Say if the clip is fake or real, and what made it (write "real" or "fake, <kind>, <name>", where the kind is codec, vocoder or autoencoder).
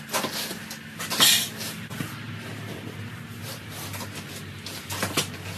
real